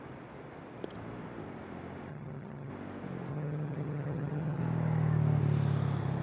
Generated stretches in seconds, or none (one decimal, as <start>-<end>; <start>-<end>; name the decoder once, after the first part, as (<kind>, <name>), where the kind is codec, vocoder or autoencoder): 2.1-2.7 (vocoder, HiFi-GAN); 3.3-4.6